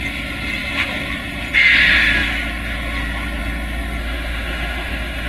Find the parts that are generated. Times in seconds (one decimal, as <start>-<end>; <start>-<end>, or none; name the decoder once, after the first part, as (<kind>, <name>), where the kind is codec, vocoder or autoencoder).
4.0-5.3 (autoencoder, DAC-VAE)